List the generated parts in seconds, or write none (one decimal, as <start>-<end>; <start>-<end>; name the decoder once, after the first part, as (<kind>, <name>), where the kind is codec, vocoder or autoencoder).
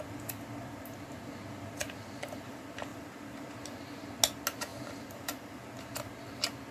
1.8-2.3 (vocoder, BigVGAN v2); 2.9-4.1; 4.7-5.6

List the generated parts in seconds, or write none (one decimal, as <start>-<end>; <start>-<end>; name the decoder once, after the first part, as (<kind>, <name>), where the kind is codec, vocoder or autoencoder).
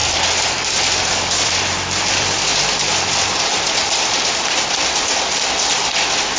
1.0-6.4 (vocoder, BigVGAN v2)